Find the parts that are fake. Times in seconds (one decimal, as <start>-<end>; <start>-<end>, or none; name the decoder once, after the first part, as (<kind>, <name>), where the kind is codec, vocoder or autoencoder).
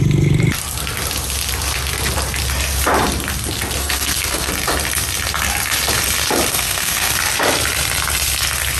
3.8-4.5 (codec, SNAC); 6.5-7.1